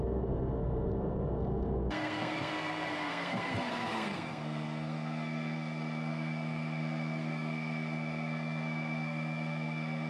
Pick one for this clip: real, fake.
fake